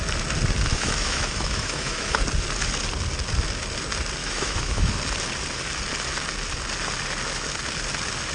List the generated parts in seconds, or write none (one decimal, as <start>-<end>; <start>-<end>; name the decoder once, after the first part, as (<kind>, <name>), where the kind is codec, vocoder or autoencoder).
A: 0.7-2.2 (autoencoder, DAC-VAE); 4.2-4.9